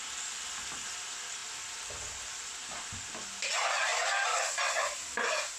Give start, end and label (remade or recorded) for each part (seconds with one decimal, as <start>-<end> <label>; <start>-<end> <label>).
0.0-5.6 recorded